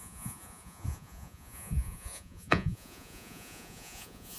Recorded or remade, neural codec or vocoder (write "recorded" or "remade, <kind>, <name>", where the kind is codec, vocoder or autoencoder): remade, vocoder, Vocos